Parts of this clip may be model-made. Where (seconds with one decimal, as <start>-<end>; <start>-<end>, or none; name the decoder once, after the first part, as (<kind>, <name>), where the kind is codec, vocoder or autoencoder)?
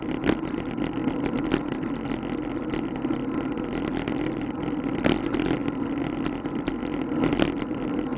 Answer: 5.6-6.7 (vocoder, BigVGAN v2)